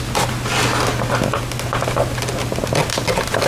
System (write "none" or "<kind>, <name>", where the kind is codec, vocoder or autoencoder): none